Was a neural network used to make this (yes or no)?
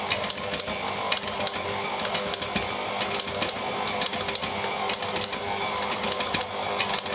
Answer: no